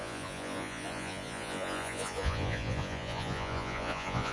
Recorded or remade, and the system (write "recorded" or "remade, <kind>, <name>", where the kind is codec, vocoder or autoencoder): remade, vocoder, Vocos